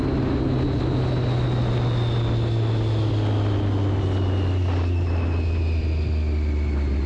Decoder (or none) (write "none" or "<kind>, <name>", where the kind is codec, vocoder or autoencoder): none